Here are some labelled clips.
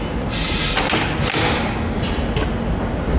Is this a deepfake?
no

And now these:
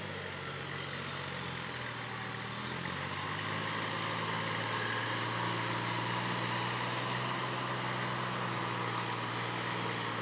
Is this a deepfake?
no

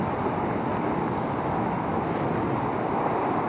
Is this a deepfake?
no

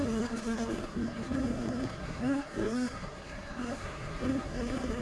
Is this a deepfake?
yes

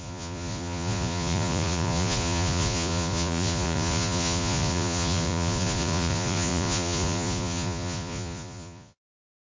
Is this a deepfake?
yes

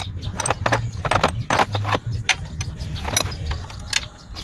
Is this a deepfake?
no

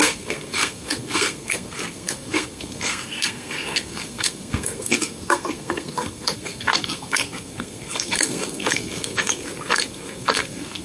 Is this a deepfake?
yes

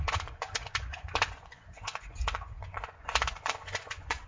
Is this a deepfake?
yes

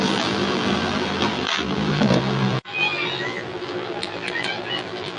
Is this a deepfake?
yes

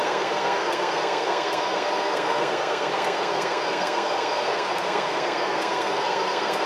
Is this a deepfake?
yes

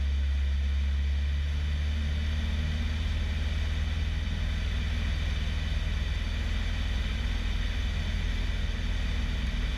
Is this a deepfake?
no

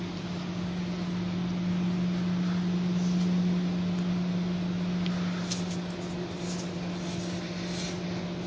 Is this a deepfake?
no